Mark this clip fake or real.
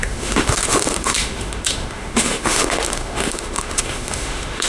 fake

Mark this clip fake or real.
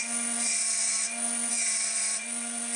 fake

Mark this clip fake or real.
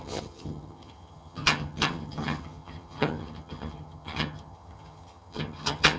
fake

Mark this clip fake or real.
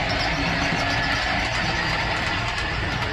real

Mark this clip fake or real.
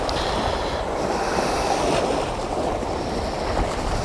real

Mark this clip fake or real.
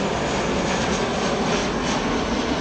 real